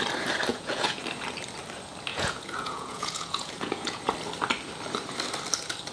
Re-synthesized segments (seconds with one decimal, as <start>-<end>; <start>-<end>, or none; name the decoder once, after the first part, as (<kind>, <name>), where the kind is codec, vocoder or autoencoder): 0.5-1.0 (vocoder, Vocos); 2.1-4.0